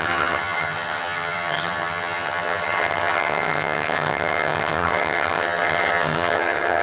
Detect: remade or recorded remade